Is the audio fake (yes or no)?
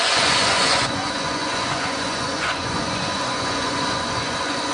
yes